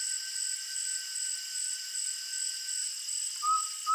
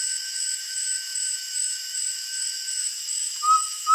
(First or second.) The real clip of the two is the first